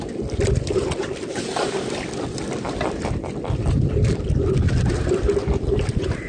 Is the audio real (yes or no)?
yes